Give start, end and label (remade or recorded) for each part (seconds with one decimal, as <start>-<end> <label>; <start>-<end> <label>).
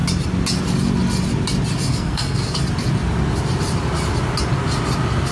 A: 0.0-1.9 recorded; 1.9-2.6 remade; 2.6-5.3 recorded